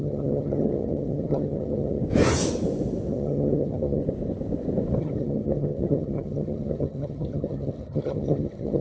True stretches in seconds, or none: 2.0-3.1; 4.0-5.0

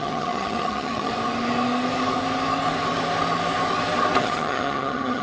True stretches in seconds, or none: 1.1-4.2